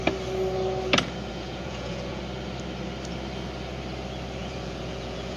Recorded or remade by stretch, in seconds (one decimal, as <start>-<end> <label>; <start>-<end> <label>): 0.0-1.3 recorded; 1.3-2.2 remade; 2.2-4.4 recorded; 4.4-5.4 remade